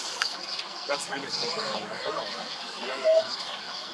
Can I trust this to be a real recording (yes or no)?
no